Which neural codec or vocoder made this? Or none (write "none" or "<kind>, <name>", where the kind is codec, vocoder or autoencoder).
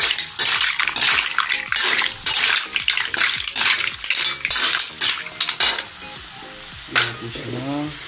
none